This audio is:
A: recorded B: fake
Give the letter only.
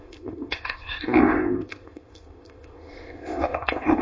B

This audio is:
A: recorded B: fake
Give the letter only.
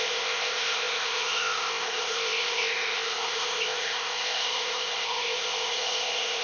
B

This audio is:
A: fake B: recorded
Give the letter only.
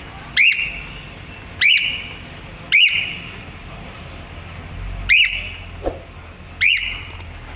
B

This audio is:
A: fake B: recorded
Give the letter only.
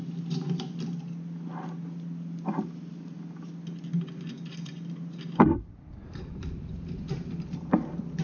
B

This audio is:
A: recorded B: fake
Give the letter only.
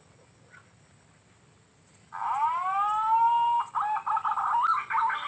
A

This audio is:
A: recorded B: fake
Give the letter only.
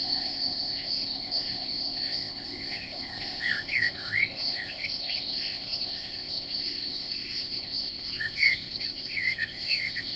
B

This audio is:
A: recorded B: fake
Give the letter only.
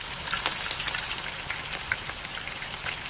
A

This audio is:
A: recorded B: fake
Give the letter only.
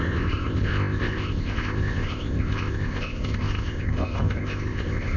B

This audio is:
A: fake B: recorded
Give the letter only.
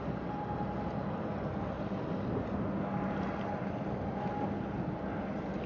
B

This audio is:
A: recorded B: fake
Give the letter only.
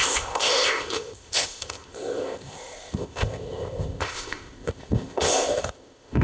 B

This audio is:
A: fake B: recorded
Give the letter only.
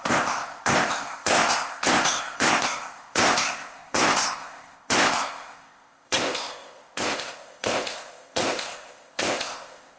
A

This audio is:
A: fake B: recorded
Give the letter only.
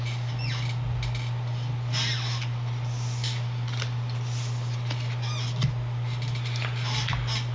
B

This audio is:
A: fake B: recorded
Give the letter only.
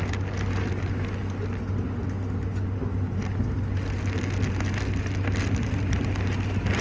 B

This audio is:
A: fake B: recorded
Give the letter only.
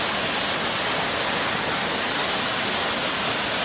B